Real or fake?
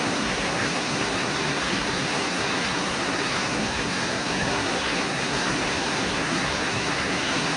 fake